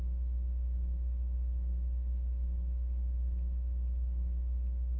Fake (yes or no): no